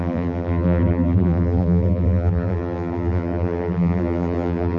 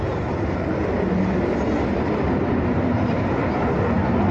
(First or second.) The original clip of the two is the second